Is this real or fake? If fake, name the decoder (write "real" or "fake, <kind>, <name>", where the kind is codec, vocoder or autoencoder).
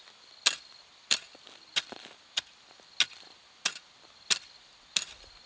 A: real